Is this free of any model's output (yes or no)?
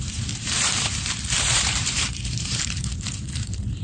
no